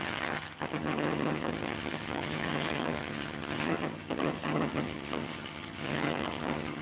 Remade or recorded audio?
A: remade